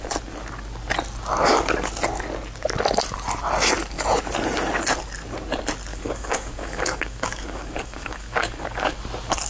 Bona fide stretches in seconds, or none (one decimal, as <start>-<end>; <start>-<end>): 0.0-5.9; 9.0-9.5